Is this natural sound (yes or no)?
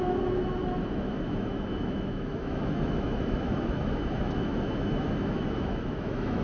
no